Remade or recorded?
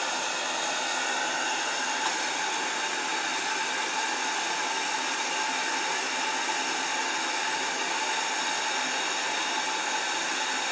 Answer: recorded